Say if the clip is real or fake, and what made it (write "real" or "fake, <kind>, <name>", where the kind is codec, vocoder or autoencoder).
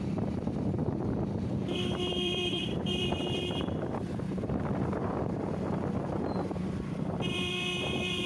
fake, vocoder, BigVGAN v2